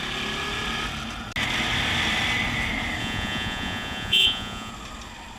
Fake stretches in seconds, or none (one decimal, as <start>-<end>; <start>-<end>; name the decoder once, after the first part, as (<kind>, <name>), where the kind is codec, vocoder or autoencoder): 3.0-4.7 (vocoder, Vocos)